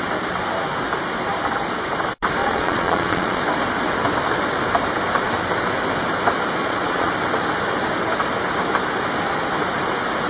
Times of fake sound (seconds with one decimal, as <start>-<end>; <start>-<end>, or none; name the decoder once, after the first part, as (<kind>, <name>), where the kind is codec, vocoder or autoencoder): 2.4-3.4 (vocoder, Vocos); 6.6-7.1